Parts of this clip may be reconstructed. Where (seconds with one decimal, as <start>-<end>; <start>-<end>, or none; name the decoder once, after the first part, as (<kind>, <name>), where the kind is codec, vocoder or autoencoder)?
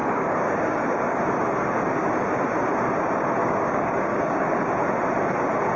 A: 0.0-1.2 (codec, DAC); 3.4-4.7